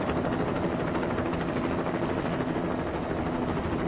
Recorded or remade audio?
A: recorded